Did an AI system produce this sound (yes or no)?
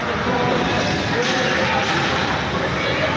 no